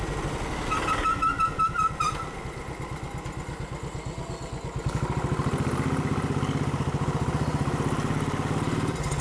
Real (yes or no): yes